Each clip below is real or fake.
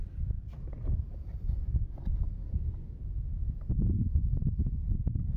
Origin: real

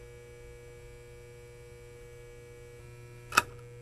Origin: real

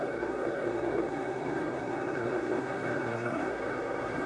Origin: fake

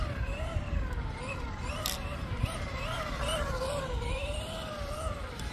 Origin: real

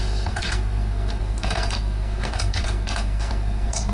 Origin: fake